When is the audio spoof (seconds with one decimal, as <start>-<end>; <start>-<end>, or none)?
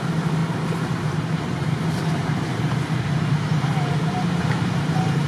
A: 0.0-5.3